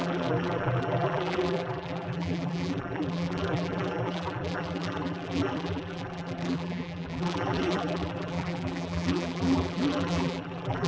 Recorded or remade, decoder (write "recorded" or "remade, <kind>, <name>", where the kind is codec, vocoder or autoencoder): remade, vocoder, BigVGAN v2